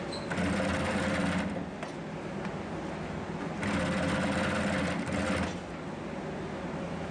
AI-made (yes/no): no